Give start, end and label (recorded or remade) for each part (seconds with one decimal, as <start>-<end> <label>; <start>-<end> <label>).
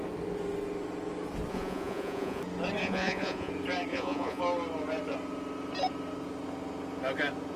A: 0.0-1.5 recorded; 1.5-2.4 remade; 2.4-2.8 recorded; 2.8-3.5 remade; 3.5-3.9 recorded; 3.9-4.4 remade; 4.4-7.6 recorded